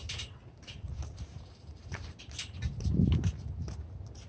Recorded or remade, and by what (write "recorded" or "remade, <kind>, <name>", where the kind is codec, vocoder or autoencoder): remade, vocoder, BigVGAN v2